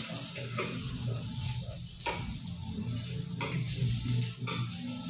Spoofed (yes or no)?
no